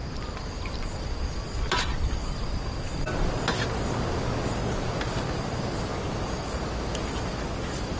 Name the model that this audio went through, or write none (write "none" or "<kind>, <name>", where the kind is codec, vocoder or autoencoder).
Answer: none